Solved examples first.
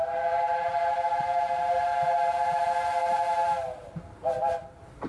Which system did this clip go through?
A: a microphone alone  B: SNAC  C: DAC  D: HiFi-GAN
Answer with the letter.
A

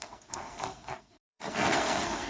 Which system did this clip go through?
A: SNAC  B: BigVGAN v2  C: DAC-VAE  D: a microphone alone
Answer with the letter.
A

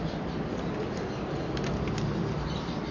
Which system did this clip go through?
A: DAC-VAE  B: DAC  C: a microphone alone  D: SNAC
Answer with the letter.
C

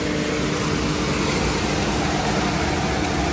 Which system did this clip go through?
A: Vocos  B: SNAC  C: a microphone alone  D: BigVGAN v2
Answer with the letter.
C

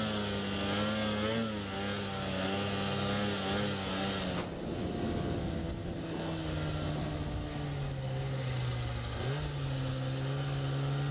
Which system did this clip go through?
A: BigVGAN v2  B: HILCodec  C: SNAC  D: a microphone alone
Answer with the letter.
D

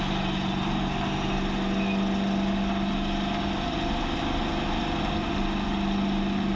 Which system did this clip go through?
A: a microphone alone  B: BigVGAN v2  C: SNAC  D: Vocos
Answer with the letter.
A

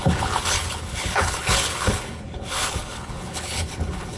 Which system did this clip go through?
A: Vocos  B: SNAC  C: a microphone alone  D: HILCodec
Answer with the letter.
D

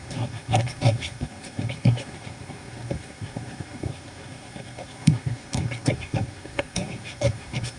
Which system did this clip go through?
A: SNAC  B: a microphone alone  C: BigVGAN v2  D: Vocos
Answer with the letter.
A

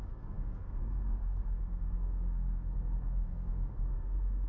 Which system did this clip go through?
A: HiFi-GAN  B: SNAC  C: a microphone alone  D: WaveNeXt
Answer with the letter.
B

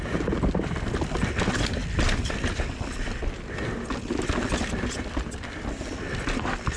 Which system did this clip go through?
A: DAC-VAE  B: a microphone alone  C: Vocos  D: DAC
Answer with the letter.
B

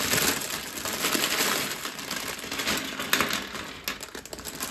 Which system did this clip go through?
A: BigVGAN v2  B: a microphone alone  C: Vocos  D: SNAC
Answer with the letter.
B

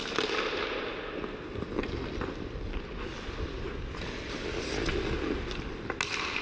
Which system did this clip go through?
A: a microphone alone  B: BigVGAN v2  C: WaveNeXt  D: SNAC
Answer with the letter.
A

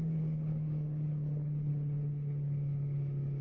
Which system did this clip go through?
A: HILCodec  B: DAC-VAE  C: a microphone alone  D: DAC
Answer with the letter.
A